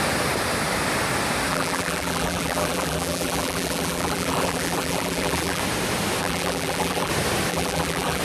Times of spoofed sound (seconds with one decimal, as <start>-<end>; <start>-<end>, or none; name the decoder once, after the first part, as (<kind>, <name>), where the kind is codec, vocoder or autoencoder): 1.5-5.6 (vocoder, BigVGAN v2); 6.2-7.1; 7.5-8.2